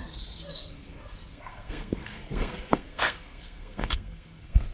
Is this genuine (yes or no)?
no